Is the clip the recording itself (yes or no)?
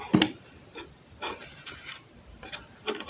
yes